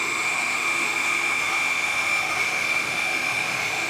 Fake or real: fake